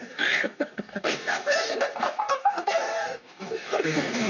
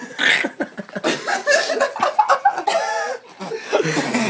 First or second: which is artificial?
first